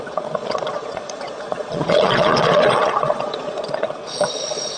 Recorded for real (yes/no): no